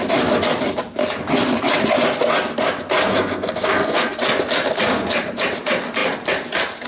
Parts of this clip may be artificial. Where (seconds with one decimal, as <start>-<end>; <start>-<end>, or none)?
3.1-4.2

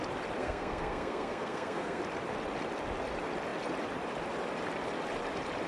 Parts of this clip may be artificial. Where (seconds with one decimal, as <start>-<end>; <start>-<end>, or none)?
0.4-2.0

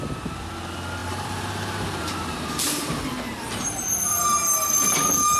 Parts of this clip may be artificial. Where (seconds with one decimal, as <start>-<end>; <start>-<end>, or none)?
1.0-4.2

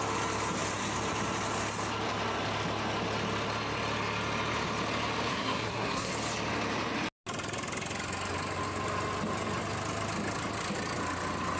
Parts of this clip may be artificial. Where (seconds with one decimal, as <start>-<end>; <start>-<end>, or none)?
5.3-6.1

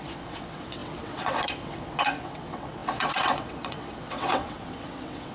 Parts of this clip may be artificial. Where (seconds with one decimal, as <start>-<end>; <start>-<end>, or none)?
0.0-5.3

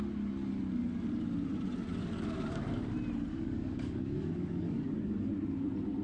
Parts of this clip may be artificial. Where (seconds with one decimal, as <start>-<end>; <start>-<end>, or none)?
2.0-2.9; 3.3-5.3

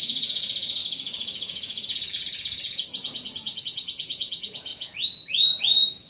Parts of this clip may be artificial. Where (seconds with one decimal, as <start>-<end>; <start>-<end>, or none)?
0.0-6.1

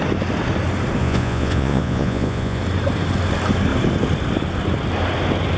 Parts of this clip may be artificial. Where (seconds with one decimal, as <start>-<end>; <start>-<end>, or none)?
1.0-2.6